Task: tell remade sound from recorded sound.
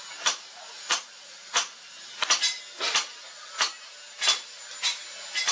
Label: recorded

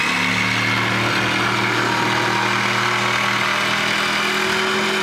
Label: recorded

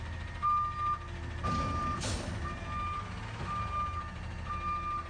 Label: recorded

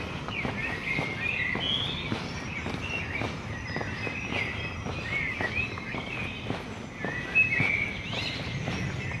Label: recorded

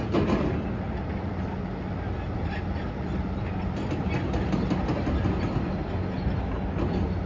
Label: recorded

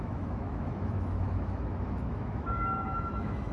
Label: remade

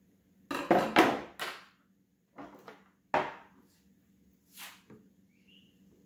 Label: recorded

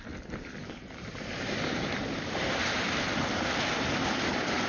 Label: recorded